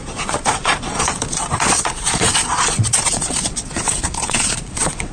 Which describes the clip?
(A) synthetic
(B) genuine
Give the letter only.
A